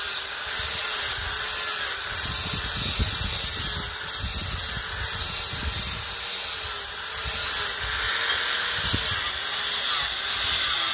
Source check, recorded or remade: recorded